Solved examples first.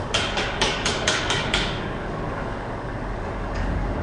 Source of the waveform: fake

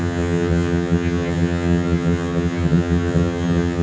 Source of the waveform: fake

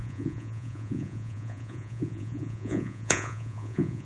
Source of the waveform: fake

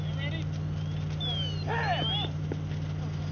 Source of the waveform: real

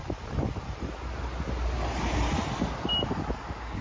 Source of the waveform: real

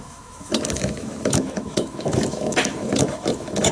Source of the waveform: fake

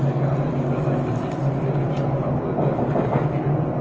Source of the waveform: real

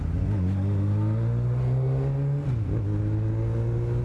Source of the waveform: real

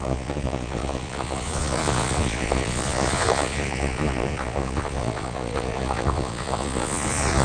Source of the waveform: fake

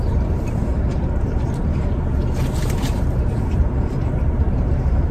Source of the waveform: fake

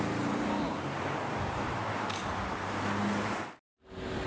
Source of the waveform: real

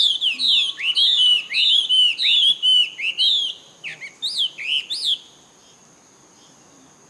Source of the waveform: real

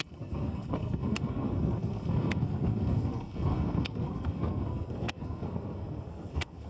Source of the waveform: fake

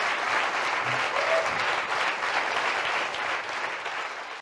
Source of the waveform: real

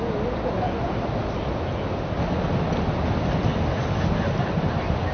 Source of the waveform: real